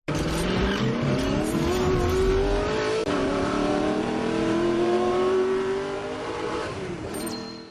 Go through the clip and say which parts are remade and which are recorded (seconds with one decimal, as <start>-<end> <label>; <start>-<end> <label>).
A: 0.0-3.2 recorded; 3.2-7.1 remade; 7.1-7.7 recorded